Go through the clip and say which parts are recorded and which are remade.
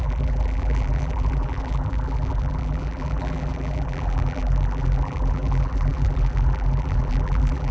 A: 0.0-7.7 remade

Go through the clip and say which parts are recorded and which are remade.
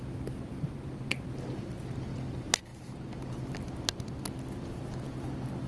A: 0.0-5.7 recorded